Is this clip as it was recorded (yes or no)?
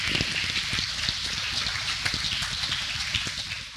yes